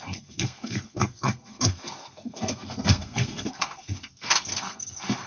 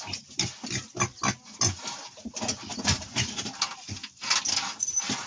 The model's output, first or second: first